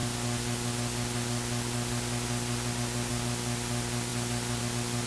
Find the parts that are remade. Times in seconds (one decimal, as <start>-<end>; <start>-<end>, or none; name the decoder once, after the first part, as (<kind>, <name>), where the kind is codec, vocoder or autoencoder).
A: none